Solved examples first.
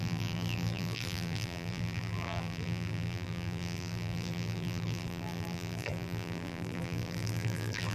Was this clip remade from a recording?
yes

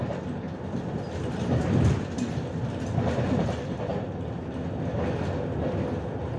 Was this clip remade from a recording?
no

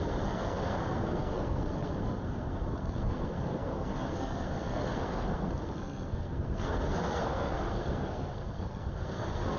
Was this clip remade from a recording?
yes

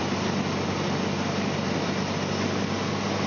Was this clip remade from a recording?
no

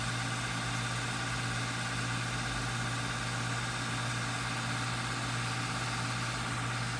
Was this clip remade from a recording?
no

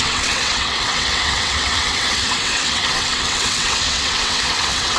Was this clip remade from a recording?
yes